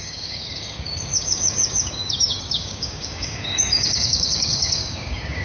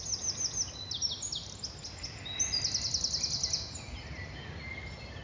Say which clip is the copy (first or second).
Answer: first